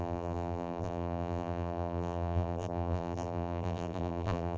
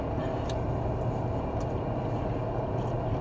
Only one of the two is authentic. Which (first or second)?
second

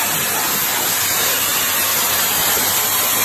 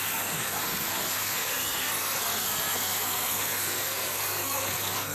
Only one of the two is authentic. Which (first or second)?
first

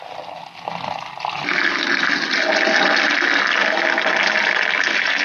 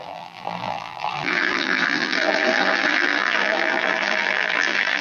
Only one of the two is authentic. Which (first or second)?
first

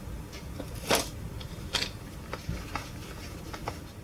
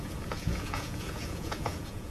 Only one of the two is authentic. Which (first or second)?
first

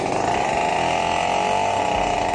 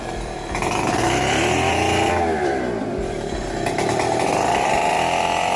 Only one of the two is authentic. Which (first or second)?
first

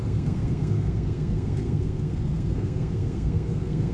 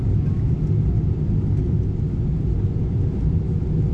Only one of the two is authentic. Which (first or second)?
second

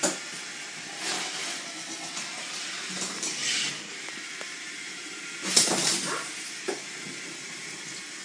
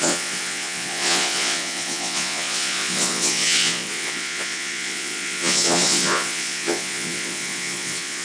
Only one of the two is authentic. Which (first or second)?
first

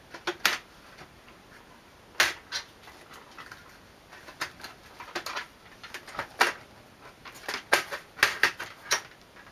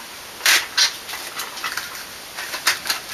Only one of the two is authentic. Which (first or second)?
first